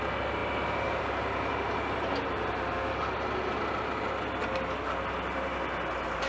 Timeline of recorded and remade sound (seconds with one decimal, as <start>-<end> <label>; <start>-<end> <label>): 0.0-6.3 recorded